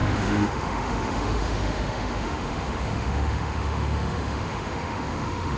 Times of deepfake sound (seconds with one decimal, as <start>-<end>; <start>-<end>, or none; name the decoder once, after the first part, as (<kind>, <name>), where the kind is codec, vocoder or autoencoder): 0.0-5.6 (autoencoder, DAC-VAE)